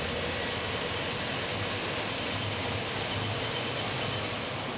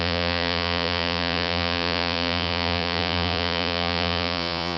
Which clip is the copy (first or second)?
second